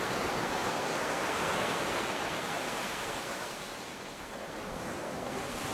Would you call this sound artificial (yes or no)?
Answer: yes